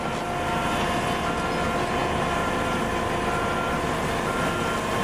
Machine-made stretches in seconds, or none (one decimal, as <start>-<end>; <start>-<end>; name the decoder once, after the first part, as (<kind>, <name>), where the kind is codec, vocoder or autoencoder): none